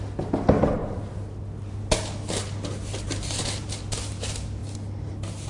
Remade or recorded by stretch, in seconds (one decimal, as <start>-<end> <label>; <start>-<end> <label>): 0.0-5.5 recorded